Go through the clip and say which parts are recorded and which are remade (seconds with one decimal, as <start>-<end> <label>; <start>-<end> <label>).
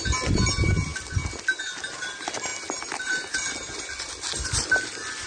0.0-5.3 recorded